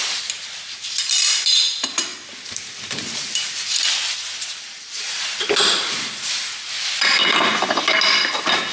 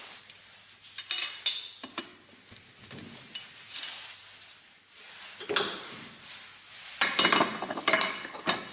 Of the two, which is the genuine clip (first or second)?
second